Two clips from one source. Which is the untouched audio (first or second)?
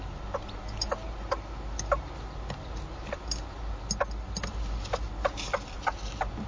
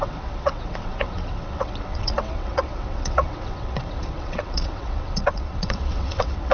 first